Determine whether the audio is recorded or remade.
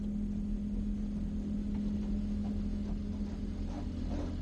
recorded